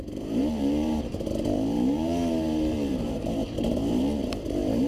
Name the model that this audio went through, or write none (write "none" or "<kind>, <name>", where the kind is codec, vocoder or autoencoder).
vocoder, BigVGAN v2